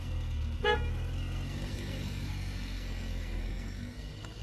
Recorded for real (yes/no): no